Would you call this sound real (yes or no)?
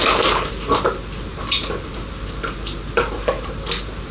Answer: yes